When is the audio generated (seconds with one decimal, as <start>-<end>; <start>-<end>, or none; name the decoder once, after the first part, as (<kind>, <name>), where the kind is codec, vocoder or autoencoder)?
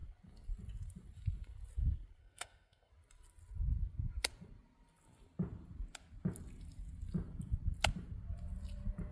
2.2-2.9 (codec, SNAC)